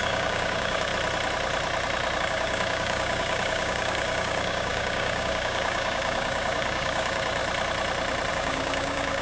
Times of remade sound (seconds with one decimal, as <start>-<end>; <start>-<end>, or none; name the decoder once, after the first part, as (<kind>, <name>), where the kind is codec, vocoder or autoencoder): 0.0-0.9 (codec, DAC); 2.2-7.4; 8.3-9.2